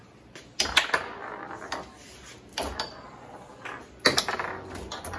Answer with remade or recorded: recorded